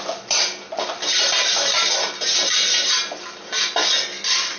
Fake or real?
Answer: real